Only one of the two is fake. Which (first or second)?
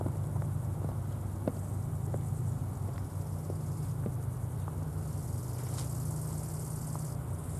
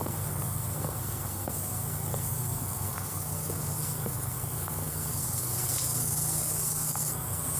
second